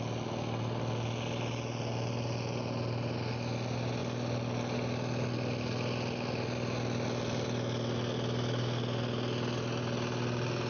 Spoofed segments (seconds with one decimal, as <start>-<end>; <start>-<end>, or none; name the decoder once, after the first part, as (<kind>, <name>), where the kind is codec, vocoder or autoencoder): none